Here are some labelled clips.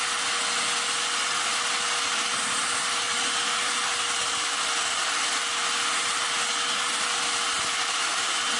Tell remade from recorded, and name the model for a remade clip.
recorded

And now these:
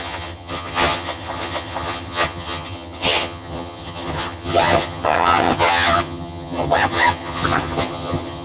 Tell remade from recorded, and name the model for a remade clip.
remade, vocoder, HiFi-GAN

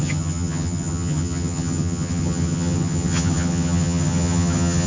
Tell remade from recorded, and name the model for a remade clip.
remade, vocoder, HiFi-GAN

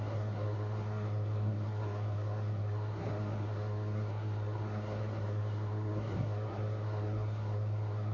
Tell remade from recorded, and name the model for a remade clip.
remade, codec, SNAC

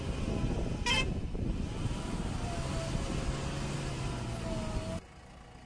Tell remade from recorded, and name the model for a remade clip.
recorded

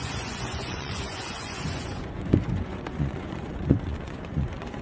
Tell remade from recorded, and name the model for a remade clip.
remade, vocoder, Vocos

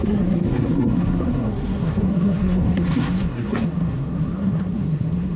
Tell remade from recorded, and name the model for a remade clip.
remade, codec, SNAC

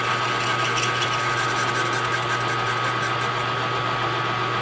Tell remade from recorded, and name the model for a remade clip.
recorded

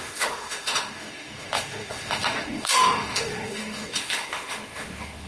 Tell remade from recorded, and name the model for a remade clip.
remade, autoencoder, DAC-VAE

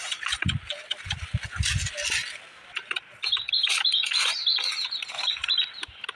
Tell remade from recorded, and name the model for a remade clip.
recorded